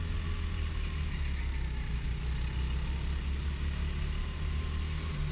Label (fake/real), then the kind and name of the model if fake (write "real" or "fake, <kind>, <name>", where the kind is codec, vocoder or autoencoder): real